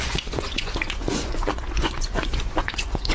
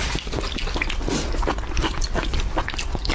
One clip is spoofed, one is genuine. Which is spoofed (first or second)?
first